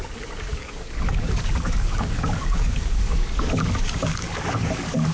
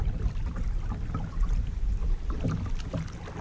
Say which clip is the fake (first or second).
first